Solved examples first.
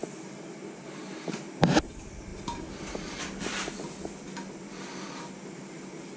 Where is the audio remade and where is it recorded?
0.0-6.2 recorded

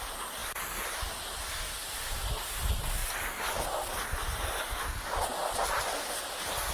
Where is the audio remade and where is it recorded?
0.0-6.7 recorded

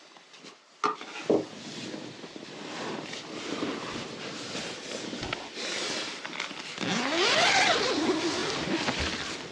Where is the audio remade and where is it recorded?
0.0-9.5 recorded

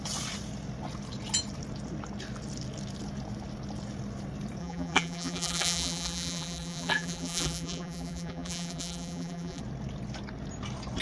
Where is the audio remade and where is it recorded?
0.0-4.6 recorded; 4.6-9.6 remade; 9.6-11.0 recorded